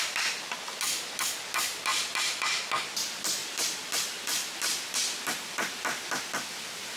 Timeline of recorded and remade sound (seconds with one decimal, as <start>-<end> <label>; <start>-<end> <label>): 0.0-7.0 recorded

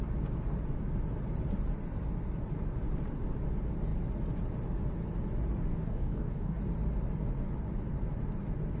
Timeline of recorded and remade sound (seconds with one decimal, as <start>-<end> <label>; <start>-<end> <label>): 0.0-5.8 recorded; 5.8-6.6 remade; 6.6-8.8 recorded